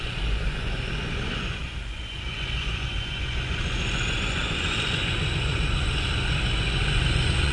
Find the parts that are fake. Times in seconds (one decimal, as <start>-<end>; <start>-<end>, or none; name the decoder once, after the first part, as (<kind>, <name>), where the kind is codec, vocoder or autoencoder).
0.0-7.5 (vocoder, Vocos)